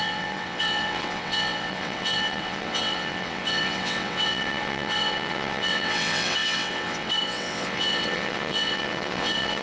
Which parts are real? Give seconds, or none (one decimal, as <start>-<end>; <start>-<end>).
none